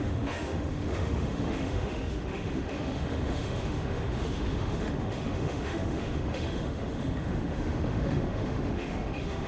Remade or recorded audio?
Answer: remade